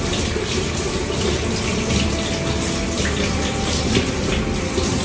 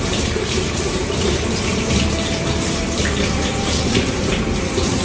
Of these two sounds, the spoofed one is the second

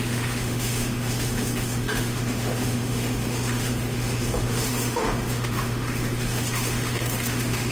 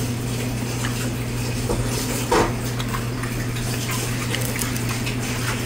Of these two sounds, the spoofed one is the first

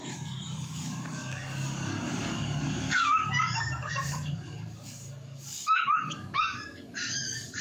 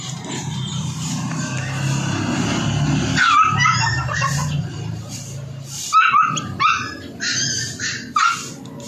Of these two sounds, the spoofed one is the first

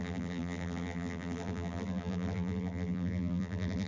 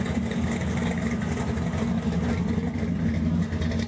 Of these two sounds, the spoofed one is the first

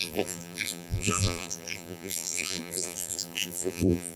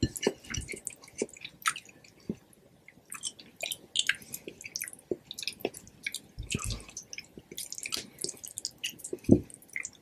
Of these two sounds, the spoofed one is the first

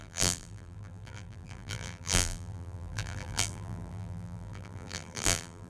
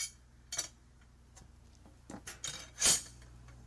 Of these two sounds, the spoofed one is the first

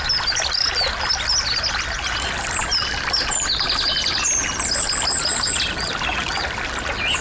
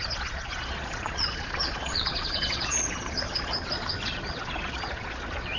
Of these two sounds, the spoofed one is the second